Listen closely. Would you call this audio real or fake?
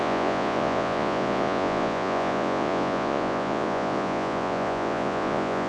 fake